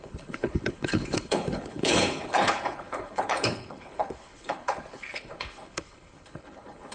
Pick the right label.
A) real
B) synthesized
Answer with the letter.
B